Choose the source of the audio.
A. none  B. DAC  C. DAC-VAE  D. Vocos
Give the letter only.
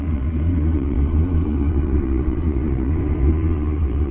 D